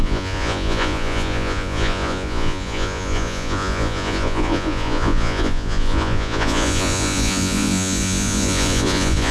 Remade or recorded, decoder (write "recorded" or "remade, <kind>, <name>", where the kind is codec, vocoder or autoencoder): remade, vocoder, Vocos